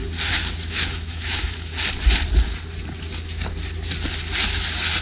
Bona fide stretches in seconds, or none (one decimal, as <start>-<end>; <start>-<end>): 0.0-0.7; 1.7-5.0